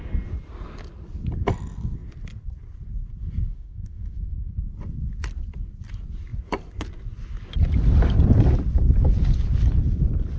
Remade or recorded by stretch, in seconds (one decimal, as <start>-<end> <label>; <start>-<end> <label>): 0.0-3.5 recorded; 3.5-4.5 remade; 4.5-10.4 recorded